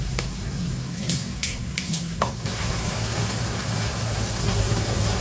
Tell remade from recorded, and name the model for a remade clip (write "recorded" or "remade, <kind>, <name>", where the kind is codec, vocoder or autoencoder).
remade, codec, SNAC